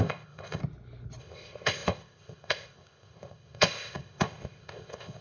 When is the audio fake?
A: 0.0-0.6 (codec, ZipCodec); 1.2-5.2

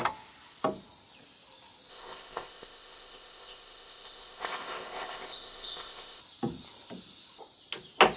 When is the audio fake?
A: 1.9-6.2 (codec, ZipCodec)

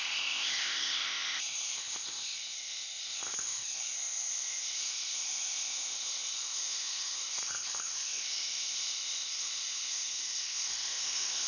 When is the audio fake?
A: 0.0-11.5 (codec, ZipCodec)

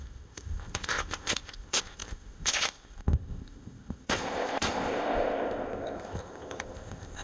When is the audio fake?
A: 0.0-7.2 (codec, ZipCodec)

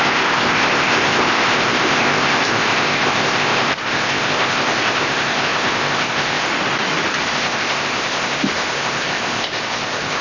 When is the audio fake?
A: 0.0-6.5 (codec, ZipCodec); 7.2-10.2